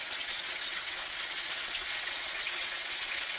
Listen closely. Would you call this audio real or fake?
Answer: fake